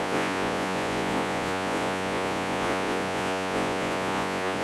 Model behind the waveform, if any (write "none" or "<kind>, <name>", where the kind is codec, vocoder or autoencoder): vocoder, Vocos